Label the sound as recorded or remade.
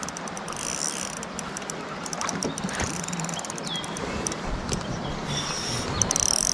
recorded